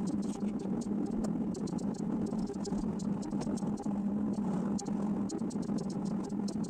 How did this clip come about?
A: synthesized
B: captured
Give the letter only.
B